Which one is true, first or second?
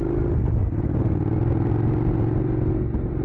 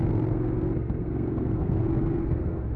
first